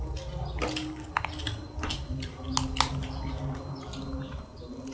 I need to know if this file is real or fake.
real